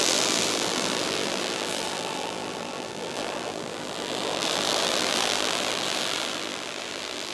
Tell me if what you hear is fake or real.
fake